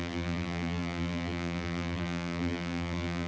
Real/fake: fake